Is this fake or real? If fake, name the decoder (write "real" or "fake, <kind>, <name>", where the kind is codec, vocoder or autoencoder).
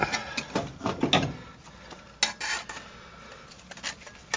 real